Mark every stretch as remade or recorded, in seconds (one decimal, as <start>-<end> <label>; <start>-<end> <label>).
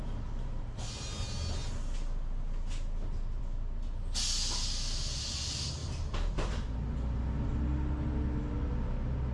0.0-9.3 recorded